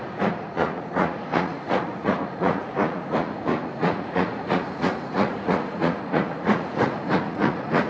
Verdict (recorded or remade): remade